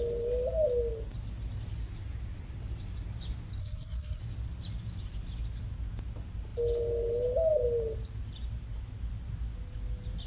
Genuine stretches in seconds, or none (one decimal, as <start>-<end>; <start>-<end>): 0.0-3.6; 4.2-10.3